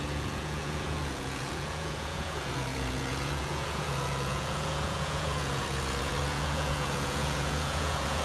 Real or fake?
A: fake